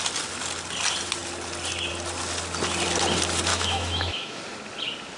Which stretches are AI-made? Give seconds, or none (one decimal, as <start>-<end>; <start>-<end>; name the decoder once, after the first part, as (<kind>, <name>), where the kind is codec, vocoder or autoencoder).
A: 3.5-4.4 (autoencoder, DAC-VAE)